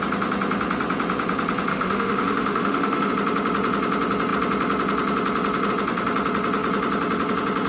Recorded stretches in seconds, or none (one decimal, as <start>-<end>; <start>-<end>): 0.0-1.7; 3.1-7.7